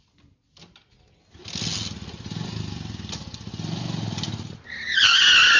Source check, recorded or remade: recorded